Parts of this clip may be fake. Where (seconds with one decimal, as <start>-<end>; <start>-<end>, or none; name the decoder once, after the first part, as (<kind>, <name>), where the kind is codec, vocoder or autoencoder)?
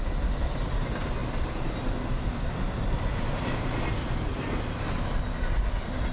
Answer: 4.0-4.6 (vocoder, BigVGAN v2)